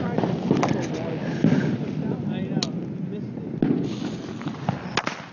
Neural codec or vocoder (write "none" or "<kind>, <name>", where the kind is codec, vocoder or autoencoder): none